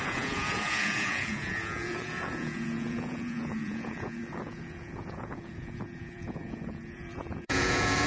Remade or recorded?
remade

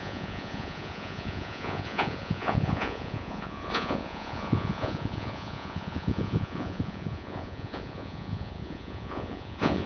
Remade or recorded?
remade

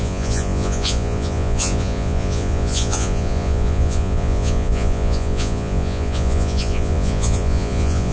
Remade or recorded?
remade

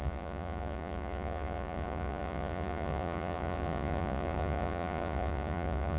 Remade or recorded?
remade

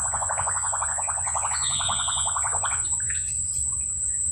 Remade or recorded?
remade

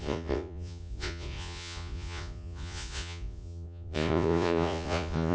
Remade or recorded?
remade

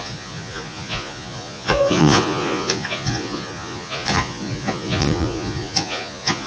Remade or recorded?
remade